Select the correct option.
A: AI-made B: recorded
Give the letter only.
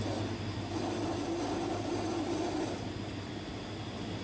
B